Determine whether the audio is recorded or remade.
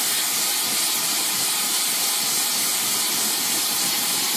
remade